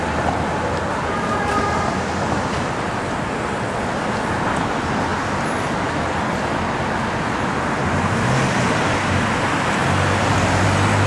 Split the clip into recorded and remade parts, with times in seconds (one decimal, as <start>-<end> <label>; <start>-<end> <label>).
0.0-11.1 recorded